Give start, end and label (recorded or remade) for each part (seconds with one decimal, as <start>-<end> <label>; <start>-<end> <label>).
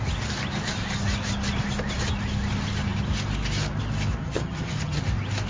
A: 0.0-4.2 recorded; 4.2-5.0 remade; 5.0-5.5 recorded